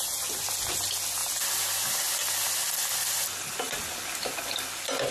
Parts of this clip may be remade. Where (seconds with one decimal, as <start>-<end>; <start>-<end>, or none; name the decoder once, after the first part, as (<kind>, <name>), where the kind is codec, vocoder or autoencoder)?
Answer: none